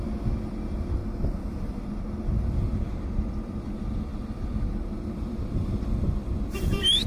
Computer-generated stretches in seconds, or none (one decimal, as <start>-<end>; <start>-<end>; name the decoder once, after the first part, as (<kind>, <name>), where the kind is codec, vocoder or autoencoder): 0.0-1.0 (vocoder, BigVGAN v2); 1.6-7.1